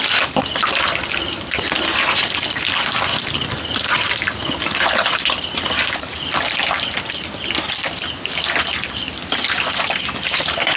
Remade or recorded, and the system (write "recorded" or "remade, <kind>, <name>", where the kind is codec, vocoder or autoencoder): remade, vocoder, BigVGAN v2